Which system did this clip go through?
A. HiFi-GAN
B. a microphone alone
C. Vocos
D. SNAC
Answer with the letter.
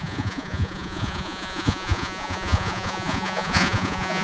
C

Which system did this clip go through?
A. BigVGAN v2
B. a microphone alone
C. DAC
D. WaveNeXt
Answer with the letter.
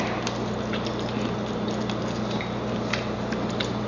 B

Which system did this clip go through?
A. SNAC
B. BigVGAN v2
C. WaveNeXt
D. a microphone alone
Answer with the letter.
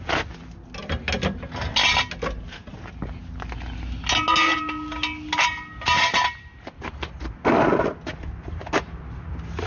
D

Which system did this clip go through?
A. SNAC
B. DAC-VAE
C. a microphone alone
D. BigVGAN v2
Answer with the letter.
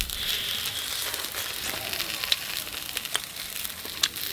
C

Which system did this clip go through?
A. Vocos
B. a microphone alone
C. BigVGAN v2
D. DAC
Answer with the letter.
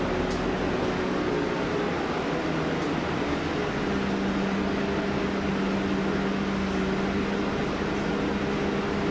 B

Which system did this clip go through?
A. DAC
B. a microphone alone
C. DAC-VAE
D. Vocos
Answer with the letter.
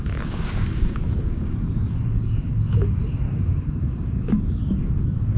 A